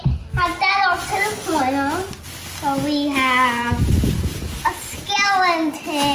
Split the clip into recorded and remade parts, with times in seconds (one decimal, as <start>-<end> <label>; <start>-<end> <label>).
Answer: 0.0-1.1 recorded; 1.1-1.6 remade; 1.6-6.1 recorded